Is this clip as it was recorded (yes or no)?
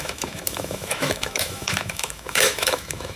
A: no